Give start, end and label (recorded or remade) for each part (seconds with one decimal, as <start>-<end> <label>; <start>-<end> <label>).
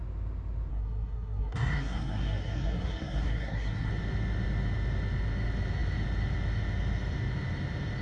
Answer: 0.0-0.7 recorded; 0.7-3.9 remade; 3.9-8.0 recorded